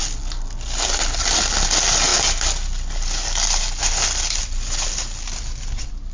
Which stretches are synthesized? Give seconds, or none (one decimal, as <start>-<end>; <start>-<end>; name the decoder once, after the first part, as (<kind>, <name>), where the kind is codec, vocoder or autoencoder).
none